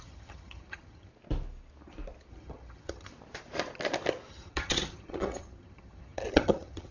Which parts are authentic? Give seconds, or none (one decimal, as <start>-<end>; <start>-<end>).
1.1-2.3; 3.1-4.3